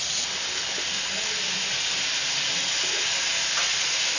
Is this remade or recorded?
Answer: recorded